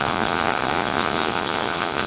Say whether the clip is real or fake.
fake